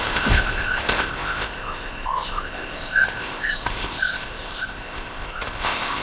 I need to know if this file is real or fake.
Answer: fake